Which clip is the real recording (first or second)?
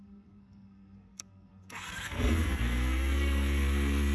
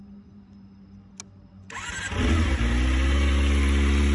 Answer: second